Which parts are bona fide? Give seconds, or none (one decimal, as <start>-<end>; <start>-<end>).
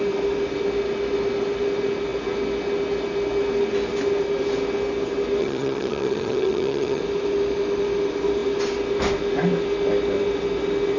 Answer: 0.0-5.4; 7.0-11.0